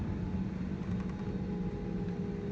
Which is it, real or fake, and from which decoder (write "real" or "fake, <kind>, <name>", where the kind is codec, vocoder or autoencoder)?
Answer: real